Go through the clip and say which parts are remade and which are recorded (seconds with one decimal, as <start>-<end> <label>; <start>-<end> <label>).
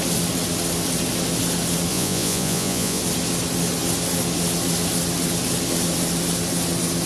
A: 0.0-1.9 recorded; 1.9-3.0 remade; 3.0-7.1 recorded